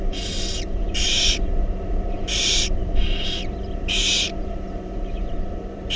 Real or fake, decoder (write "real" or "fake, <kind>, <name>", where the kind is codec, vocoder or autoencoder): fake, vocoder, BigVGAN v2